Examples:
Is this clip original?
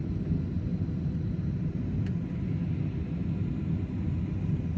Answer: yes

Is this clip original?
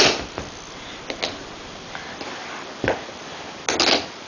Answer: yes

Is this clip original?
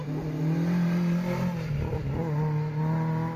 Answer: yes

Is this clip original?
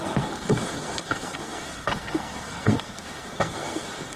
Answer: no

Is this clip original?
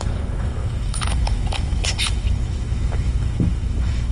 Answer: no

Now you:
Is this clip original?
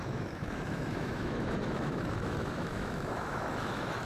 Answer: no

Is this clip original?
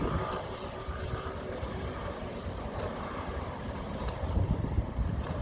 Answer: no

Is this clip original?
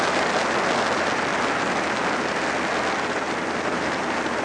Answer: yes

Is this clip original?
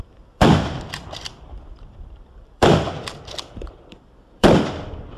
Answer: no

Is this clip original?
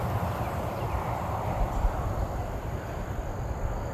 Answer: no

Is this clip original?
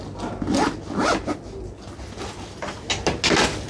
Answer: yes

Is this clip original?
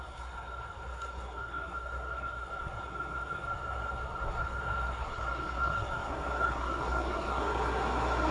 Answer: no